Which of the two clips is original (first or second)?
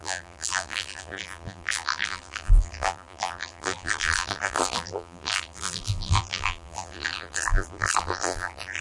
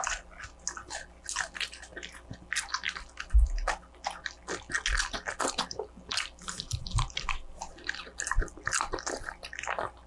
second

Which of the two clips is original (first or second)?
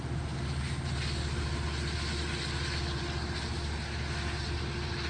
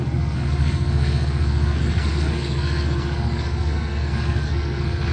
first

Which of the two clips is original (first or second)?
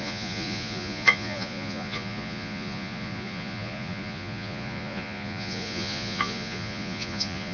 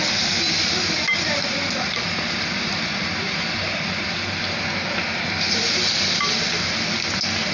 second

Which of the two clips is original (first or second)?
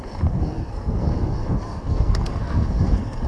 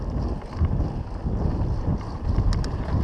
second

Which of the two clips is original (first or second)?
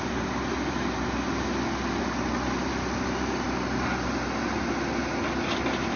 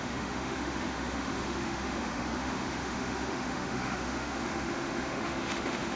first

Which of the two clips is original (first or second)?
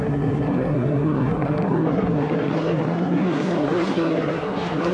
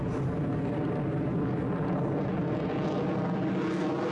second